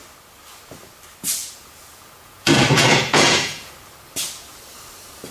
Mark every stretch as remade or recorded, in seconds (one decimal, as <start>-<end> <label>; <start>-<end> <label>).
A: 0.0-1.4 recorded; 1.4-3.7 remade; 3.7-5.3 recorded